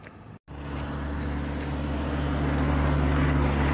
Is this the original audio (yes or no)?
yes